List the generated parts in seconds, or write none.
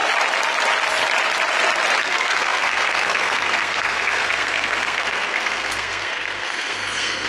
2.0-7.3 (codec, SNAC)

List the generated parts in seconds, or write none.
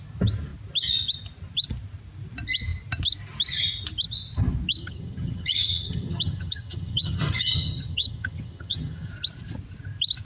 4.8-9.1 (vocoder, HiFi-GAN)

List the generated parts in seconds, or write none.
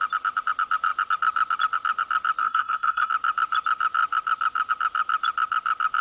2.4-3.1 (codec, SNAC)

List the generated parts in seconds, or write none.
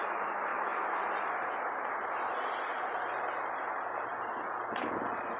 0.5-1.0 (autoencoder, DAC-VAE)